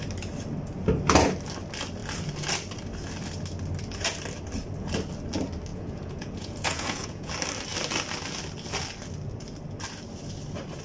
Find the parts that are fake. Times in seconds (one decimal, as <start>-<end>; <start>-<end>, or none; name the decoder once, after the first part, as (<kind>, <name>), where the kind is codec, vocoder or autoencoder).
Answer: 5.7-7.3 (vocoder, Vocos)